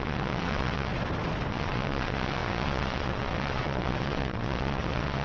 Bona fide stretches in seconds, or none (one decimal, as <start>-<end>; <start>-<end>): 0.9-1.5